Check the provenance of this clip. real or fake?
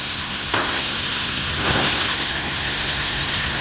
fake